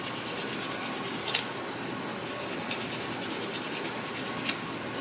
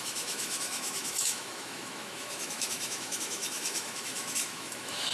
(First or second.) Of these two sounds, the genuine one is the first